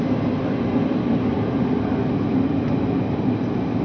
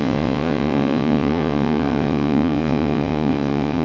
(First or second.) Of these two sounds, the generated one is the second